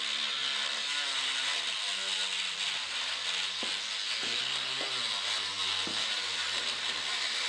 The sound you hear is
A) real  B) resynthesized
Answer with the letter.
A